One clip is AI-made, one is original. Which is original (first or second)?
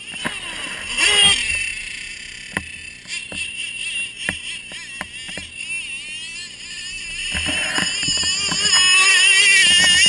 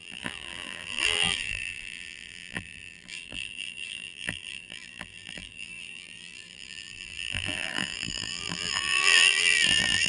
first